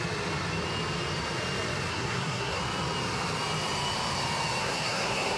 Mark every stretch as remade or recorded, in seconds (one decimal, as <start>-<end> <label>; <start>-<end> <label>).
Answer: 0.0-1.9 recorded; 1.9-2.6 remade; 2.6-4.6 recorded; 4.6-5.4 remade

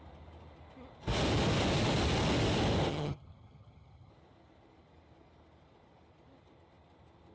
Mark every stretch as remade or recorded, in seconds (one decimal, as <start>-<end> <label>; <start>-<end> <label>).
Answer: 0.0-2.9 recorded; 2.9-4.1 remade; 4.1-7.3 recorded

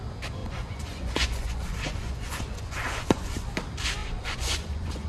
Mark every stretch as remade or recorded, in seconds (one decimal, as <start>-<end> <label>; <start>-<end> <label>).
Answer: 0.0-0.4 recorded; 0.4-3.5 remade; 3.5-4.0 recorded; 4.0-5.1 remade

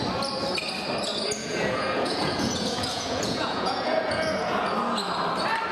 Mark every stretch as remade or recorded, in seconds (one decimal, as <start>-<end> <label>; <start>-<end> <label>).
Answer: 0.0-1.4 recorded; 1.4-4.8 remade; 4.8-5.7 recorded